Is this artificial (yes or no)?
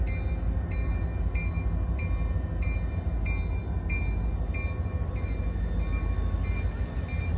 no